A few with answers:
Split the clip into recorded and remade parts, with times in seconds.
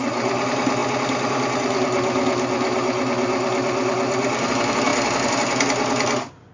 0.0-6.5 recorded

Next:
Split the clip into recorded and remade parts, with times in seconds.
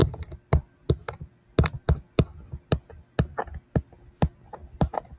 0.0-5.2 recorded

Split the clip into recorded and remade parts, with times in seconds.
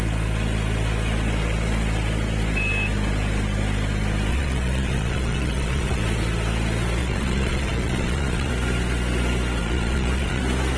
0.0-4.3 recorded; 4.3-6.0 remade; 6.0-7.0 recorded; 7.0-8.5 remade; 8.5-9.6 recorded; 9.6-10.4 remade; 10.4-10.8 recorded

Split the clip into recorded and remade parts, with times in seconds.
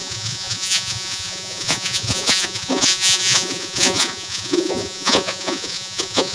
0.0-6.3 remade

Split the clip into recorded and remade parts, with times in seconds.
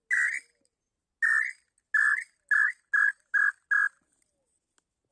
0.0-5.1 recorded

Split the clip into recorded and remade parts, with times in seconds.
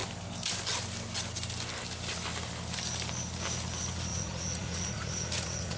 0.0-4.1 recorded; 4.1-5.8 remade